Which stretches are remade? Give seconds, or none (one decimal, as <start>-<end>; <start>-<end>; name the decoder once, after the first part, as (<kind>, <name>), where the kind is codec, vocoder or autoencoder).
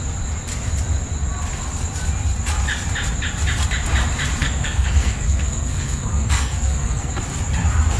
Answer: 4.4-7.1 (codec, SNAC)